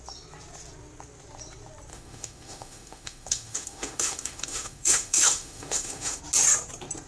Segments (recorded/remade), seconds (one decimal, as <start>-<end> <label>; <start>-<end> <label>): 0.0-1.9 recorded; 1.9-6.2 remade; 6.2-7.1 recorded